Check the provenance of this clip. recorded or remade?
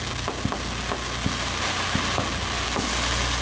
recorded